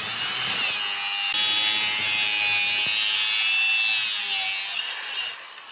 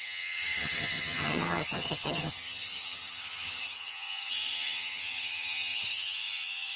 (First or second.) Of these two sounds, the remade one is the second